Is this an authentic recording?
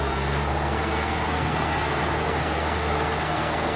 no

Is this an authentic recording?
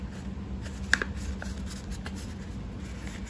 yes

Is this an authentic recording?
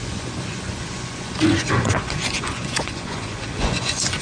no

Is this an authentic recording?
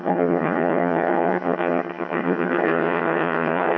no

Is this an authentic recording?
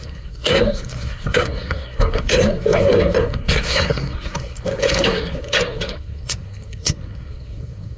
no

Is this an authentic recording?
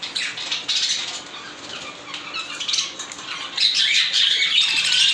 yes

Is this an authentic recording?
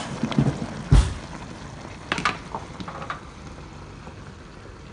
yes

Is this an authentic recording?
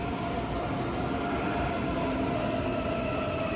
yes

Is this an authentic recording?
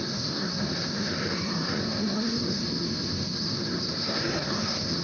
no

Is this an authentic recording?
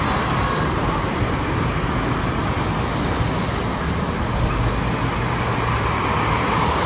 yes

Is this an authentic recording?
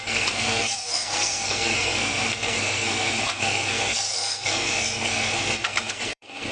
no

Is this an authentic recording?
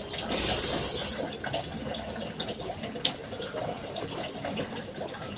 yes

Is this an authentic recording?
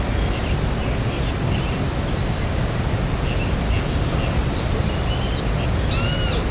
yes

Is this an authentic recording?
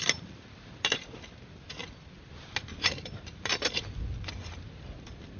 no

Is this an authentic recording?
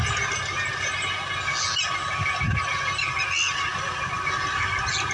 yes